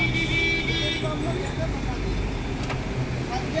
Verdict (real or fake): real